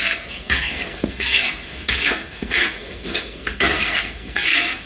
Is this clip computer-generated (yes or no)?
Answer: yes